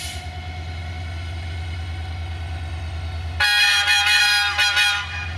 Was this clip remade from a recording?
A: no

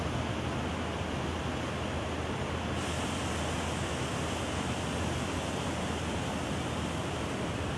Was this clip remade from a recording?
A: no